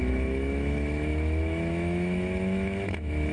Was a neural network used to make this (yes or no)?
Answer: yes